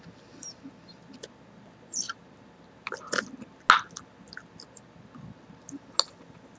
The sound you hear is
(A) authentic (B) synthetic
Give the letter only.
A